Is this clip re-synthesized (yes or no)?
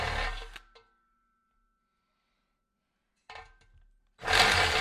no